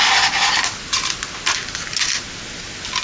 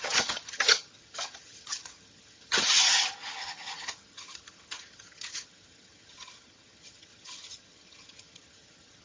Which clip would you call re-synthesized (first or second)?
second